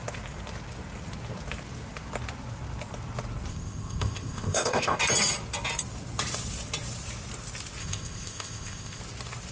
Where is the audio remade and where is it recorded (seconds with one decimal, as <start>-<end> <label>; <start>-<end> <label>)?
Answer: 0.0-3.5 recorded; 3.5-5.0 remade; 5.0-7.8 recorded; 7.8-9.0 remade; 9.0-9.5 recorded